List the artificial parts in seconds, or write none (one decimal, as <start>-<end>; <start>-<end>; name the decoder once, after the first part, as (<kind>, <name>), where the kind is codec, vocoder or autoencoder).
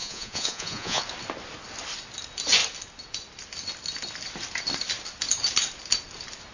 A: 0.0-1.0 (vocoder, Vocos)